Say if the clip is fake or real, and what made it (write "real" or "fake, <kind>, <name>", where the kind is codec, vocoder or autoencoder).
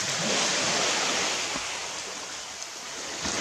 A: real